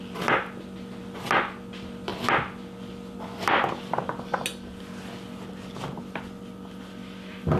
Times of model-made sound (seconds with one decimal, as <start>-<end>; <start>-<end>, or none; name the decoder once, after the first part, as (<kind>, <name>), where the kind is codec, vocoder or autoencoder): none